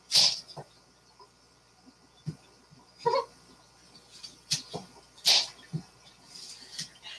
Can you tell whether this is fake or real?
real